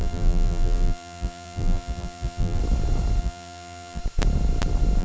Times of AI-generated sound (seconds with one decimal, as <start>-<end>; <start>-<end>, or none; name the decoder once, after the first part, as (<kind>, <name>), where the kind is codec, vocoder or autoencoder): 0.0-2.6 (vocoder, BigVGAN v2); 3.2-4.0